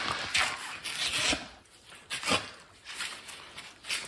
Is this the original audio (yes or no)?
yes